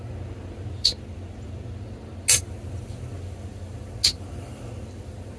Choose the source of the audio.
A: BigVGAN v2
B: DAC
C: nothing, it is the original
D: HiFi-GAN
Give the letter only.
C